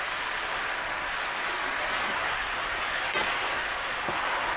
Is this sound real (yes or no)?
yes